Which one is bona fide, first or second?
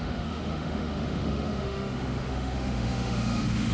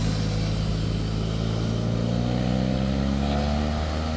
second